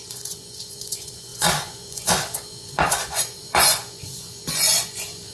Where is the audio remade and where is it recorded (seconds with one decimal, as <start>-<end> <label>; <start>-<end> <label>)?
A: 0.0-5.3 remade